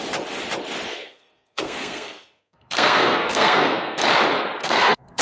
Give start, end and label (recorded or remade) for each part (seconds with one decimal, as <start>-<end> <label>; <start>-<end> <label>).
0.0-0.9 recorded; 0.9-4.0 remade; 4.0-4.6 recorded; 4.6-5.2 remade